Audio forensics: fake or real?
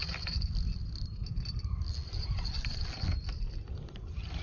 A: real